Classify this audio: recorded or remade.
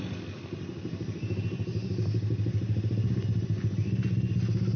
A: recorded